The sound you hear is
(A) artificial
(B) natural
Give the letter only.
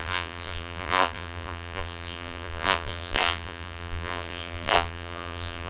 A